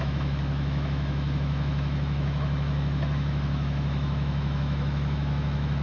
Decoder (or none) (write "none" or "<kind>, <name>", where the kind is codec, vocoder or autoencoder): autoencoder, DAC-VAE